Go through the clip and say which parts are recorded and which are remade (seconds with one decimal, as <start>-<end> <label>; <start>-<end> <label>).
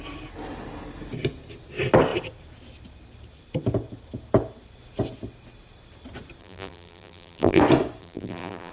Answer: 0.0-6.4 recorded; 6.4-7.6 remade; 7.6-8.0 recorded; 8.0-8.7 remade